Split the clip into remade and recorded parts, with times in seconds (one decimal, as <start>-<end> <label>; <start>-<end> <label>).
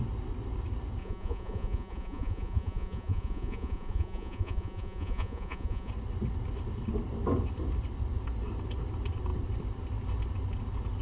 0.0-1.0 recorded; 1.0-5.9 remade; 5.9-11.0 recorded